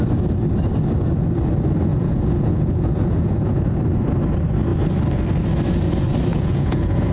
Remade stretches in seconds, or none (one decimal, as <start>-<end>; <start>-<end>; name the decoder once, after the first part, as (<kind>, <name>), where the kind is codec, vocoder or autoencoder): 1.9-3.6 (vocoder, Vocos); 6.3-7.1

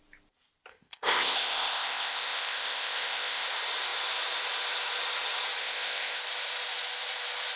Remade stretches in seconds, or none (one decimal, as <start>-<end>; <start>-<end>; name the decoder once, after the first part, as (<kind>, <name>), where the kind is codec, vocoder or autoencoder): 0.7-3.5 (codec, ZipCodec); 5.6-6.2

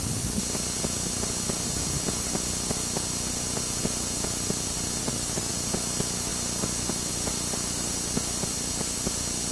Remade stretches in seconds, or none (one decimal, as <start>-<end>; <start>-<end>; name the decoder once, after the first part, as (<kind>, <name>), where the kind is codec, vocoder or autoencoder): 5.0-5.5 (autoencoder, DAC-VAE)

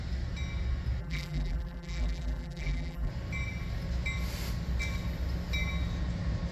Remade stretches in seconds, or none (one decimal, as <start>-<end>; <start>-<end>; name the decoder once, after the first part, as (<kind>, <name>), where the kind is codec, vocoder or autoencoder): 1.0-3.1 (vocoder, BigVGAN v2)